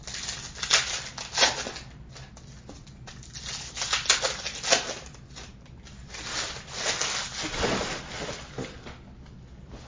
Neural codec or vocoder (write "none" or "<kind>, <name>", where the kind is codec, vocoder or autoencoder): none